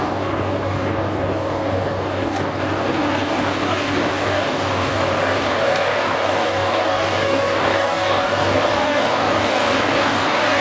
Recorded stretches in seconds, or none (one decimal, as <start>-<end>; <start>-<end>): none